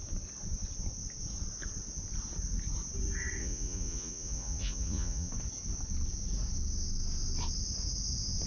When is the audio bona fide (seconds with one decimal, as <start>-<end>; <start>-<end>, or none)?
0.0-3.4; 5.3-8.5

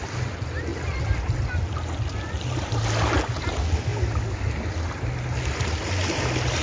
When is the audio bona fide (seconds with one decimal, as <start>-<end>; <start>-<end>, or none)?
0.0-6.6

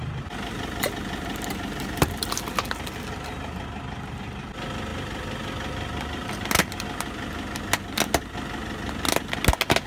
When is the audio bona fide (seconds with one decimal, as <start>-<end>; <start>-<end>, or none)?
0.0-9.9

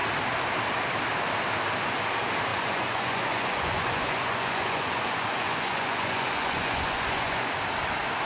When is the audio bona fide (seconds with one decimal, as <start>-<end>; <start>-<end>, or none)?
0.0-2.5; 7.5-8.3

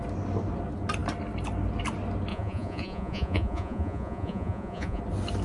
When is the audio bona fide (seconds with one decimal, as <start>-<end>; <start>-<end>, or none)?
0.0-2.3; 5.0-5.4

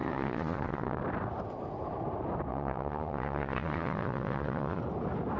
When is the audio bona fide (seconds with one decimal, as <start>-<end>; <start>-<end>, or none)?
1.0-2.5; 4.8-5.4

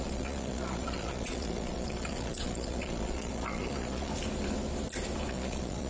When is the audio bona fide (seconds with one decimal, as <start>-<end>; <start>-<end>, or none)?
4.1-5.3

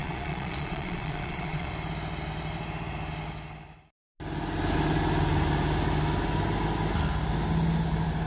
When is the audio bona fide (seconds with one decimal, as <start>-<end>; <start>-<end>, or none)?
1.7-8.3